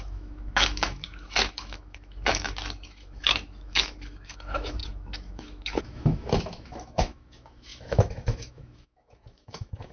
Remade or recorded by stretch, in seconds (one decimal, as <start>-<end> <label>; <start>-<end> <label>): 0.0-9.9 remade

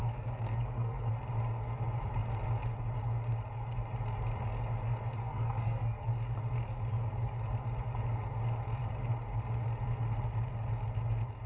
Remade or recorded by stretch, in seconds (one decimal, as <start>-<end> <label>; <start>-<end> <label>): 0.0-1.1 remade; 1.1-5.2 recorded; 5.2-6.1 remade; 6.1-11.5 recorded